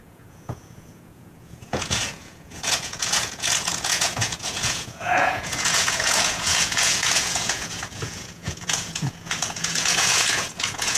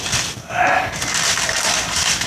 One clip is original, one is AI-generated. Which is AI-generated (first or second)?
first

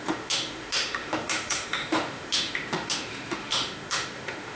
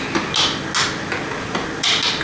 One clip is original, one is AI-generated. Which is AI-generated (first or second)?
first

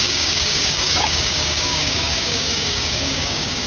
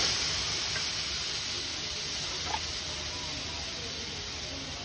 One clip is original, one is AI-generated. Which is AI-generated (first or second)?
first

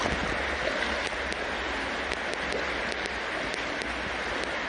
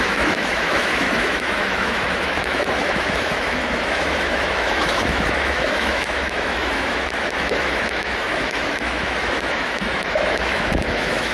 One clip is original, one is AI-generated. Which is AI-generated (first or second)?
second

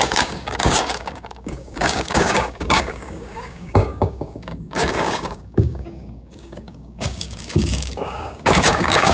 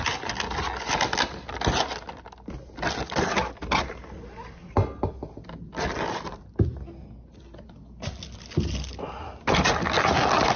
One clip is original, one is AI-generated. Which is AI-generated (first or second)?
first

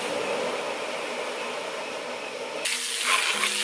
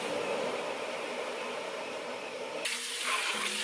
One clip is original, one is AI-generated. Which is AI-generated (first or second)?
second